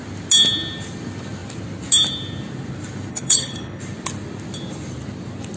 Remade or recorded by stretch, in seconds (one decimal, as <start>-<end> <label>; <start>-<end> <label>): 0.0-3.1 recorded; 3.1-3.8 remade; 3.8-5.6 recorded